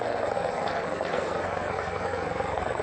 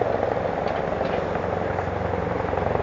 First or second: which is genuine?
second